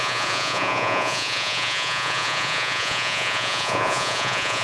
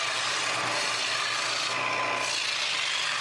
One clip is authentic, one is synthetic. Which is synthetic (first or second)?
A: first